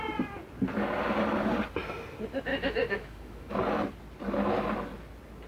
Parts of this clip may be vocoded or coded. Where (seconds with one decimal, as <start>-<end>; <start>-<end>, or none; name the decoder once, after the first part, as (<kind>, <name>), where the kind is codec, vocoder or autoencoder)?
2.5-3.6 (autoencoder, DAC-VAE)